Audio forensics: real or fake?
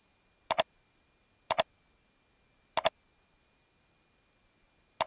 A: real